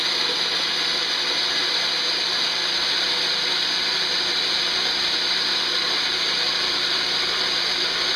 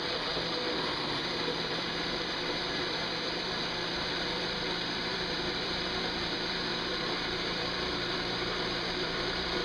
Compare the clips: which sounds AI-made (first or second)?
second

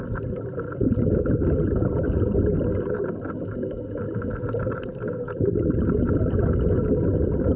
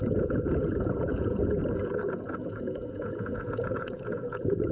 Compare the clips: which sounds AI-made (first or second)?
second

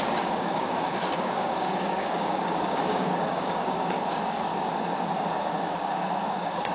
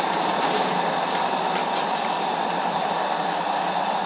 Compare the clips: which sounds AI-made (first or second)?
first